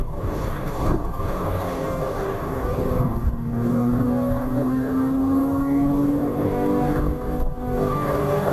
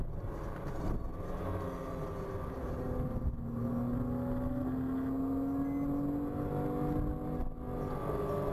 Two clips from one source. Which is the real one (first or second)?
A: second